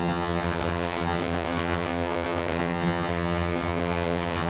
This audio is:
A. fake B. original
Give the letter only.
A